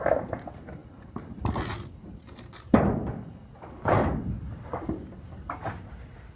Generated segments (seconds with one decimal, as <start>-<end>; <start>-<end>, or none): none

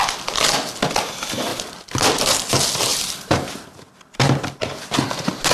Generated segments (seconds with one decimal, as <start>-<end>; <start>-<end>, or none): none

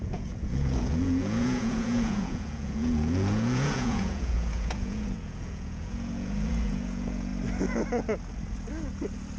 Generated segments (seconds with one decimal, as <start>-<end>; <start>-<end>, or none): 0.0-7.3

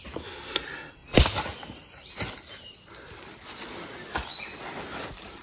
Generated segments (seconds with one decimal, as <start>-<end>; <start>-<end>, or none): none

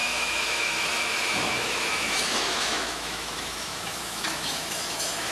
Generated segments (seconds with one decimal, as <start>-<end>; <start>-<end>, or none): 0.0-5.3

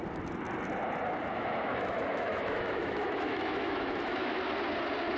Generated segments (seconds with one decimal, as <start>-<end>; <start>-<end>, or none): 1.3-4.4

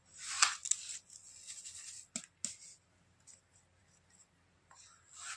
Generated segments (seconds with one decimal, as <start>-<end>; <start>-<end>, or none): none